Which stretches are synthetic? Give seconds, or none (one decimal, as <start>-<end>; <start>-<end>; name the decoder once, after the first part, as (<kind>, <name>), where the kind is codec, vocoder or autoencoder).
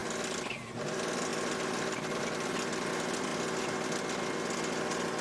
none